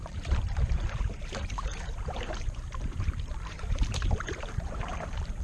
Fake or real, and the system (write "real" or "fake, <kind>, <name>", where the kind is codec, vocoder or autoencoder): fake, vocoder, BigVGAN v2